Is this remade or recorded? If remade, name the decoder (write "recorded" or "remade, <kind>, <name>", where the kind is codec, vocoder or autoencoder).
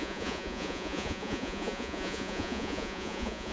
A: remade, vocoder, Vocos